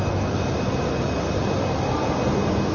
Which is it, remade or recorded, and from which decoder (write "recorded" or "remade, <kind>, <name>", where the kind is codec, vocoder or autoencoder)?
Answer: recorded